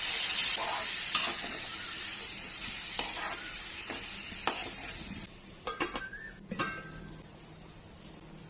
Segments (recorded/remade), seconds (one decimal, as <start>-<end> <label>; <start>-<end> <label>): 0.0-4.6 recorded; 4.6-6.6 remade; 6.6-8.5 recorded